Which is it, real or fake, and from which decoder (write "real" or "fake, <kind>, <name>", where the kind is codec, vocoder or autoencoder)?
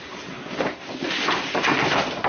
real